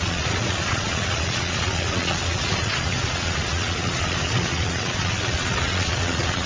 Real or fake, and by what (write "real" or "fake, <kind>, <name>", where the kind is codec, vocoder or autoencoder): fake, vocoder, Vocos